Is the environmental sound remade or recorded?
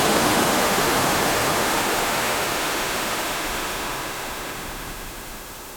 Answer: remade